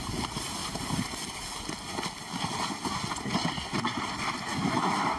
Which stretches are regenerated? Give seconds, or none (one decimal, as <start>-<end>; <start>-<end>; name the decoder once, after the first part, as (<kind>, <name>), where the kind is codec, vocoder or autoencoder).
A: 4.5-5.2 (autoencoder, DAC-VAE)